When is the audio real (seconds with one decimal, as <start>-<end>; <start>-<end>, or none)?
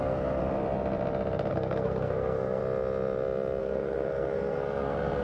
0.4-1.5; 2.6-3.6